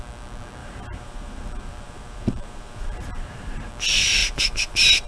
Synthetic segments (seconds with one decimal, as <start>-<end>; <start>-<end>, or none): 0.6-3.7; 4.2-5.1